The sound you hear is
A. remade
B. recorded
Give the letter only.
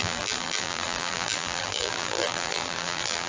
A